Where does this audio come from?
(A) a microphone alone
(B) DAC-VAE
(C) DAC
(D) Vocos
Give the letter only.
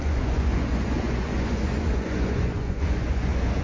D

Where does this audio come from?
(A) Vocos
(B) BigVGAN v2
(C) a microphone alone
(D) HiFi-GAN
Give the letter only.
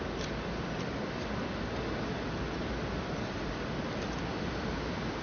C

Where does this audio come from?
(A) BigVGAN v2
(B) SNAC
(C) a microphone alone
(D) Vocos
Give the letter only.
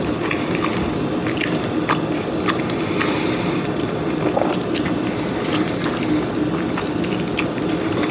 C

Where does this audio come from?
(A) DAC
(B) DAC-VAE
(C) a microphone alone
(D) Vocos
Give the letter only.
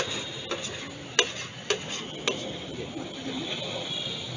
C